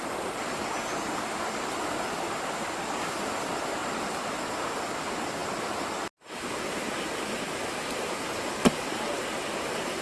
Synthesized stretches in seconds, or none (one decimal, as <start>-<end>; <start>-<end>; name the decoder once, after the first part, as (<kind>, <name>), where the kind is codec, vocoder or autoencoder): none